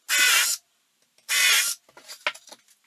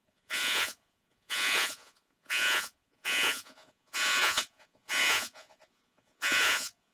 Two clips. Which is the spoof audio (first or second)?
second